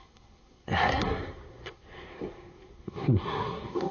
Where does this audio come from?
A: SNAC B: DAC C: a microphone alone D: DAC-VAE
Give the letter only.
A